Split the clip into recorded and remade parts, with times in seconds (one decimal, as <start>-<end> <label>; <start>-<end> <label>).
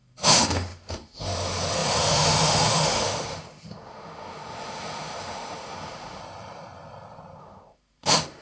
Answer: 0.0-6.2 remade; 6.2-7.4 recorded; 7.4-8.4 remade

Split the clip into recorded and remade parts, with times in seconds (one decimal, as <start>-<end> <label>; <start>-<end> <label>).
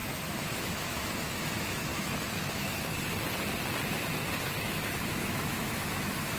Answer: 0.0-2.9 remade; 2.9-4.6 recorded; 4.6-6.4 remade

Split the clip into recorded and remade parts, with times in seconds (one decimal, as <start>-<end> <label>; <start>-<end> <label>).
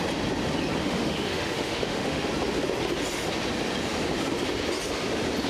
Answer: 0.0-0.8 recorded; 0.8-2.3 remade; 2.3-5.5 recorded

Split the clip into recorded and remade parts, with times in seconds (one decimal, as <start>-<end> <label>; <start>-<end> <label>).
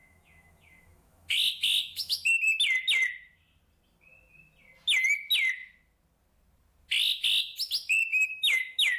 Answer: 0.0-2.4 remade; 2.4-8.1 recorded; 8.1-9.0 remade